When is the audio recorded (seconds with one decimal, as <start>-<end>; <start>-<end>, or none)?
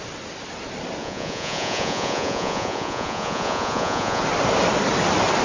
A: 0.0-1.0; 4.2-5.4